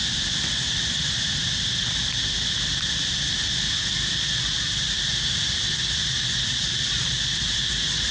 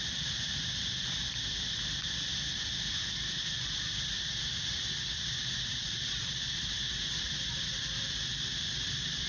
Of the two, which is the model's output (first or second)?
second